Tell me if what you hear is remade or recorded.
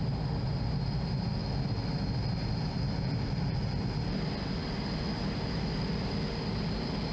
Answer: recorded